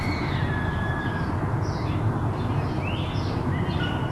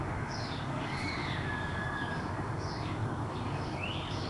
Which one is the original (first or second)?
first